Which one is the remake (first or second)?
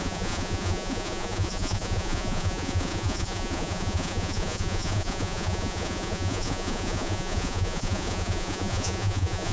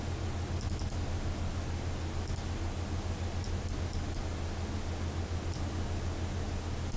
first